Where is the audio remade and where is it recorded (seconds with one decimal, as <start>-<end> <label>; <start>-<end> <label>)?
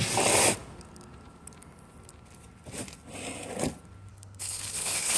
0.0-4.1 recorded; 4.1-5.2 remade